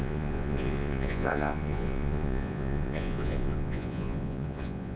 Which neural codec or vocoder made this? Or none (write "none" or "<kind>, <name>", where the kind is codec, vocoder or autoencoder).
vocoder, Vocos